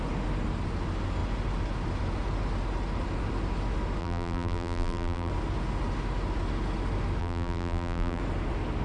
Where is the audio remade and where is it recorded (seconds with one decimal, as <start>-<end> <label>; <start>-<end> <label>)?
0.0-4.0 recorded; 4.0-5.3 remade; 5.3-7.2 recorded; 7.2-8.2 remade; 8.2-8.8 recorded